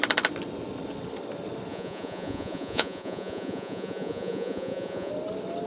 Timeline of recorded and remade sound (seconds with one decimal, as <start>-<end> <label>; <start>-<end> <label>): 0.0-1.7 recorded; 1.7-5.1 remade; 5.1-5.7 recorded